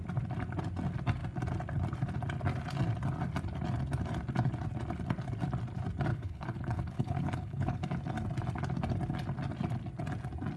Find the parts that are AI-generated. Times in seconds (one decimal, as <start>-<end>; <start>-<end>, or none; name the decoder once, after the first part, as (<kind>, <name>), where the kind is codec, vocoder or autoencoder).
6.1-7.8 (codec, HILCodec)